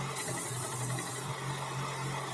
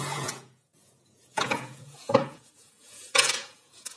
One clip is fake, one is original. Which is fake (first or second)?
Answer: second